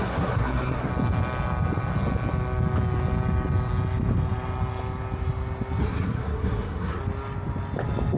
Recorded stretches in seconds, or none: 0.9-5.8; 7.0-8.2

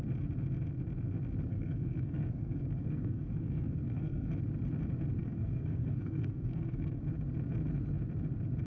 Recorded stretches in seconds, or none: 0.0-1.5; 4.3-5.2; 7.0-8.7

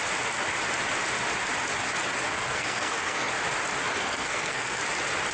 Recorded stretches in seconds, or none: 0.0-2.3; 3.3-3.9; 4.8-5.3